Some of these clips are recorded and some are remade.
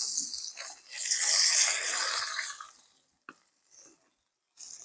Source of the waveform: recorded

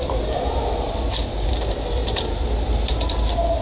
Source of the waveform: recorded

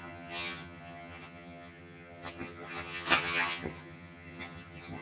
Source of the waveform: remade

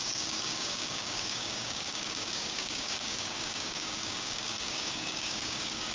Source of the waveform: remade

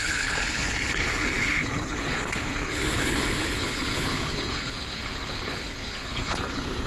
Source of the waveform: remade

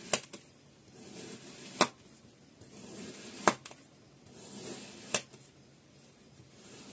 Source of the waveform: recorded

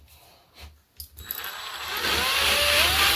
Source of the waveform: recorded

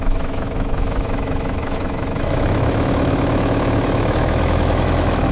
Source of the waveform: remade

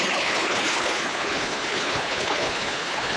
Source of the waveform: remade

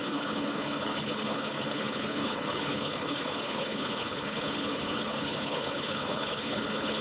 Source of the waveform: remade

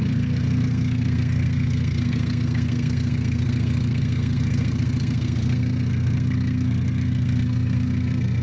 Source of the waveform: remade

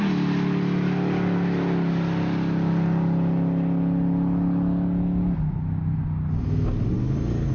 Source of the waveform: recorded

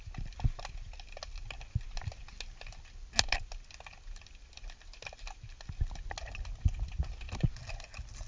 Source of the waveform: recorded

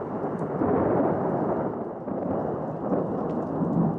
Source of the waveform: recorded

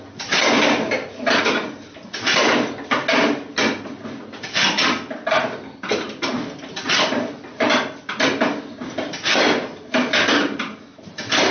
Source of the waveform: recorded